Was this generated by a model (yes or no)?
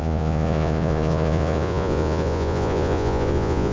yes